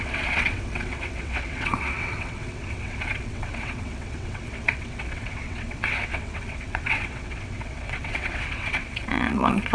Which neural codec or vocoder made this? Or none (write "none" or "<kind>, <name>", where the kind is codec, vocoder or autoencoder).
vocoder, WaveNeXt